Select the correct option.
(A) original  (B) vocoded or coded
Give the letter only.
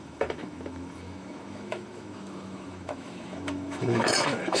B